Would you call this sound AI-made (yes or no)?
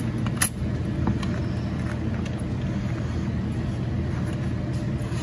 no